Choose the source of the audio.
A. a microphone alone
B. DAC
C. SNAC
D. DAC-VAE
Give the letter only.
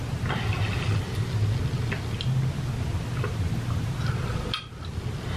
A